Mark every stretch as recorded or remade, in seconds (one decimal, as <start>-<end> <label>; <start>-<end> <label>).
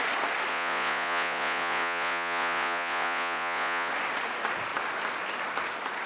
0.0-0.5 recorded; 0.5-3.9 remade; 3.9-6.1 recorded